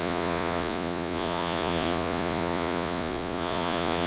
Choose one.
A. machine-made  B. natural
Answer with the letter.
A